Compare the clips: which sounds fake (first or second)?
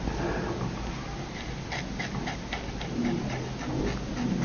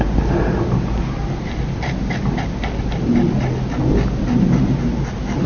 second